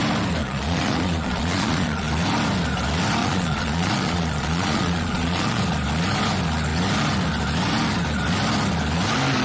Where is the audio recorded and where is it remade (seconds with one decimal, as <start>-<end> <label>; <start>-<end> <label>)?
0.0-0.4 recorded; 0.4-2.1 remade; 2.1-3.2 recorded; 3.2-5.6 remade; 5.6-9.4 recorded